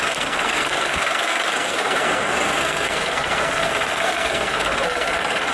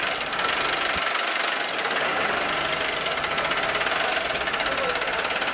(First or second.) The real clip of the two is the second